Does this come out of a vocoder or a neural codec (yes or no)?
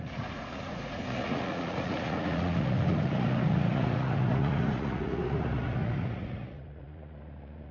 yes